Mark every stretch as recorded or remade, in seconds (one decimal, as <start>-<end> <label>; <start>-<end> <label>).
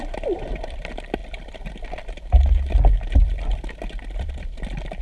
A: 0.0-1.2 remade; 1.2-4.2 recorded; 4.2-5.0 remade